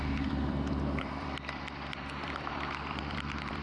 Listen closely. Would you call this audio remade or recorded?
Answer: remade